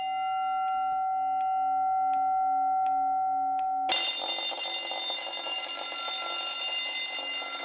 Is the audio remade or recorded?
recorded